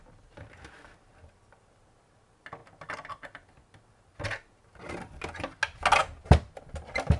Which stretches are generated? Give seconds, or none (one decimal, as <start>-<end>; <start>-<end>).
none